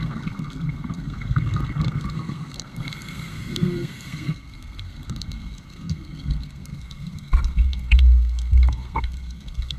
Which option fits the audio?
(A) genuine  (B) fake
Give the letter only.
B